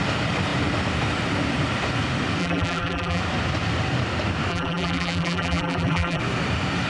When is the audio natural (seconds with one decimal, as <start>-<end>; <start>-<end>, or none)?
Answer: 0.0-2.4; 3.2-4.5; 6.2-6.9